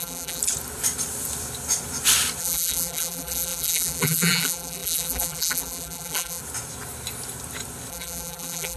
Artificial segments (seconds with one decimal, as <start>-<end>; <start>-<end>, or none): 0.0-0.4; 2.4-6.4; 7.9-8.8